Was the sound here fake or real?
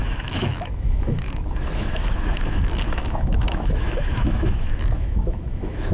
fake